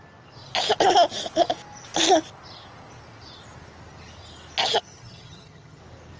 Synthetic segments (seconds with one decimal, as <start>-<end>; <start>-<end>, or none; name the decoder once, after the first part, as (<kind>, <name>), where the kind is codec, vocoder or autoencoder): 4.6-5.8 (vocoder, HiFi-GAN)